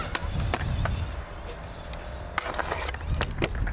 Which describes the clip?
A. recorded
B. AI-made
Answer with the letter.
A